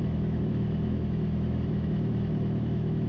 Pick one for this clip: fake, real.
fake